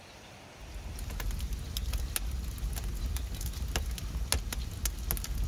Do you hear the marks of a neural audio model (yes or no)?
no